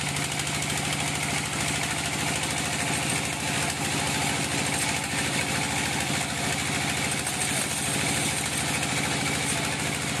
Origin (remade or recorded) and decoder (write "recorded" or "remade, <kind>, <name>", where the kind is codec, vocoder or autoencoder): recorded